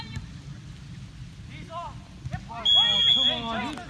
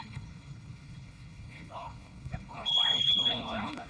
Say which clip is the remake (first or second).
second